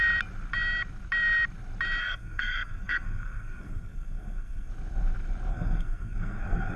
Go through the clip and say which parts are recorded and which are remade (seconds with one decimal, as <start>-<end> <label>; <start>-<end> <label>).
0.0-2.0 recorded; 2.0-4.7 remade; 4.7-5.5 recorded; 5.5-6.8 remade